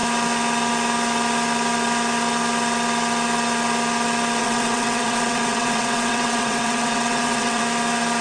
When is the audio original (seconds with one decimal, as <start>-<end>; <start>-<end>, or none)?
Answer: 0.0-4.4; 7.6-8.2